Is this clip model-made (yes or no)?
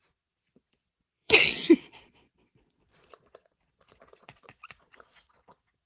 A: yes